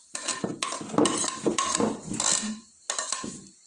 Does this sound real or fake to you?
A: real